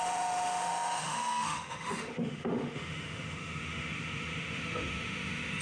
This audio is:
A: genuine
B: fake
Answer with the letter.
B